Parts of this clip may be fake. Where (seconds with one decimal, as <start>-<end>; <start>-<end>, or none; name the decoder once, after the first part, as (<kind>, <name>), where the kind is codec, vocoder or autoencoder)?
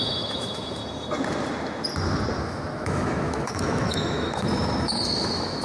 0.0-0.8 (autoencoder, DAC-VAE); 2.4-5.6